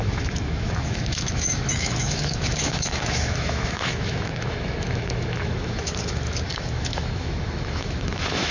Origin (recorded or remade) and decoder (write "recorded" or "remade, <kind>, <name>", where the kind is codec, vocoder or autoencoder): remade, autoencoder, DAC-VAE